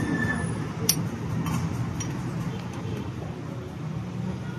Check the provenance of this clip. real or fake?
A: real